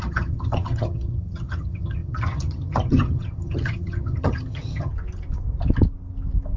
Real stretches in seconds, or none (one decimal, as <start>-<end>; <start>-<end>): 4.9-6.6